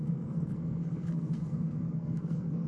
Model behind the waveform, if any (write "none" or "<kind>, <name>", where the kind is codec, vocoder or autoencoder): codec, SNAC